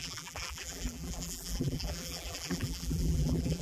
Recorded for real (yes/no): no